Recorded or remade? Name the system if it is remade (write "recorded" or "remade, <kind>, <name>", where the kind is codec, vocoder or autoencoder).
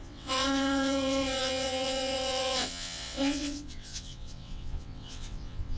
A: remade, vocoder, WaveNeXt